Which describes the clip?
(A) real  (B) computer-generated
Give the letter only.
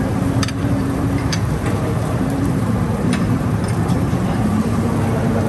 B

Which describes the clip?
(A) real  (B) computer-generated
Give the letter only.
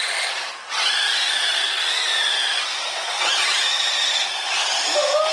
A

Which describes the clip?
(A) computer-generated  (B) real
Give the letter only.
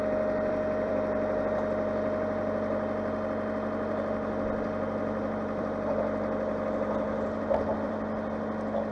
A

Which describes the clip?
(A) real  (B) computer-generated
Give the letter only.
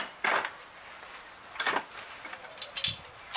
A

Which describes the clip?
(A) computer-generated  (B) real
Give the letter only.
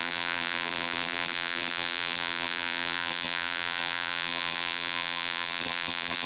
A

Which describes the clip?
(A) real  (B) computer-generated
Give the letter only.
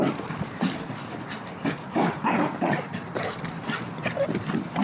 B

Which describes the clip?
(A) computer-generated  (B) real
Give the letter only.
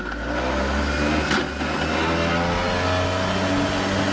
B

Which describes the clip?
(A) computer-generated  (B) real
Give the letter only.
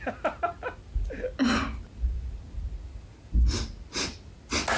B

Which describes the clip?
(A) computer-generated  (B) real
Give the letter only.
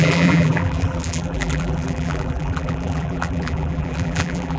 A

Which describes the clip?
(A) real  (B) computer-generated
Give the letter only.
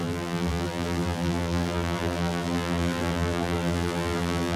B